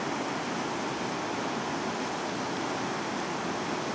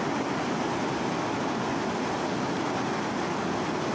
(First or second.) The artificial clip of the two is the second